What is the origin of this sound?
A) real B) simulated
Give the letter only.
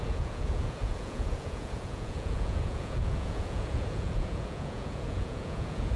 B